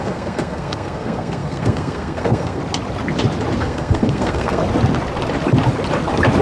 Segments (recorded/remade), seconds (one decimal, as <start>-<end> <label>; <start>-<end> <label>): 0.0-2.6 remade; 2.6-3.6 recorded; 3.6-4.6 remade; 4.6-6.4 recorded